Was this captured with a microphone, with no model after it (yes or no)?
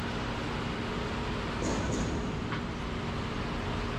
yes